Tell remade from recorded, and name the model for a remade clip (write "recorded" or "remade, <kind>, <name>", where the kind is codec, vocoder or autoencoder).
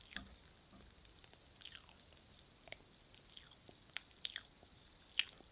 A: recorded